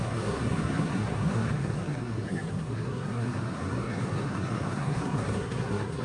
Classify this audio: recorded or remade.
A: remade